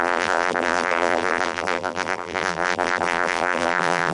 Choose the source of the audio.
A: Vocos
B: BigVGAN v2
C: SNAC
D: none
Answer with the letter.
B